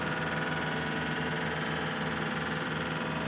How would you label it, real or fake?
real